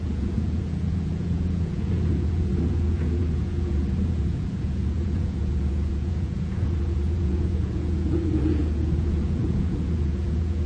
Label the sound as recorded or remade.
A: remade